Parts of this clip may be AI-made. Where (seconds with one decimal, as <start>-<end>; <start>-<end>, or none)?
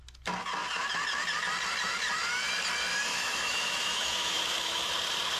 3.1-4.9